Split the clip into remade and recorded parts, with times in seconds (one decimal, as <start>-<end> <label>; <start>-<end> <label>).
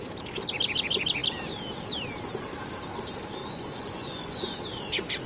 0.0-3.4 recorded; 3.4-4.6 remade; 4.6-5.3 recorded